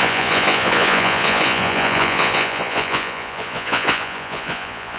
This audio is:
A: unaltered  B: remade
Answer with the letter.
B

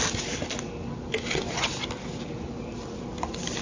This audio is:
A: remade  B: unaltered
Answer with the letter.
B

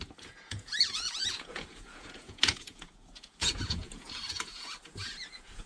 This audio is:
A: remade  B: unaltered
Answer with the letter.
A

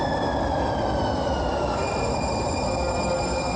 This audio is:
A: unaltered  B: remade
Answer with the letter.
A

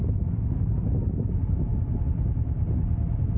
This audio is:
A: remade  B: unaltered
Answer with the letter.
B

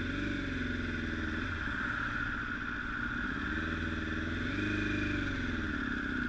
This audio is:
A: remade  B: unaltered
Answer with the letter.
B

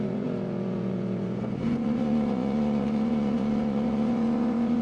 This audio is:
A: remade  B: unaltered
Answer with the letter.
A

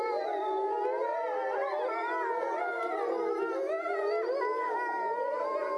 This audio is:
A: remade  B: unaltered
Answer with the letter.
B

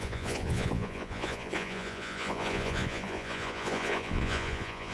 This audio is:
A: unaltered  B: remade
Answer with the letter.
B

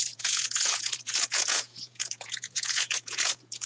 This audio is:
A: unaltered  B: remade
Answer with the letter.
B